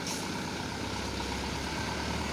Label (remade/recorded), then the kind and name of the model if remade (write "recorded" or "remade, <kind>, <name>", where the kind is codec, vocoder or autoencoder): recorded